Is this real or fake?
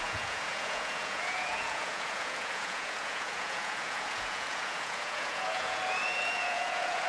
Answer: fake